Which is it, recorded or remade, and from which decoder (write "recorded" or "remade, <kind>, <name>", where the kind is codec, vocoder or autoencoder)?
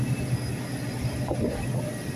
recorded